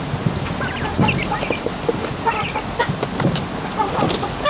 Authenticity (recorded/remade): recorded